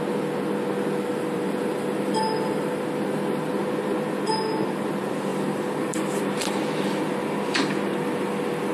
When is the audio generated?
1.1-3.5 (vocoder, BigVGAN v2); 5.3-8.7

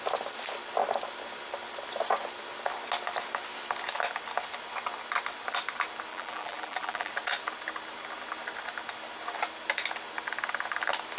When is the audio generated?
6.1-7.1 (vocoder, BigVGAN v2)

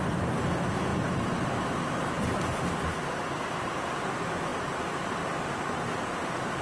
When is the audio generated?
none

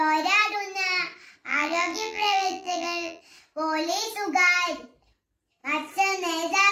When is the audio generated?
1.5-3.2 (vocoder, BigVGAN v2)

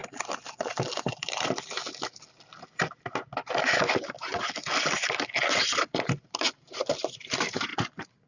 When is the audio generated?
1.0-1.8 (vocoder, BigVGAN v2); 6.4-7.7